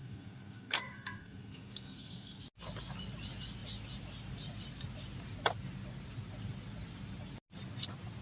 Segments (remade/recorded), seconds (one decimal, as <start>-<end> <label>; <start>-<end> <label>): 0.0-2.4 remade; 2.4-8.2 recorded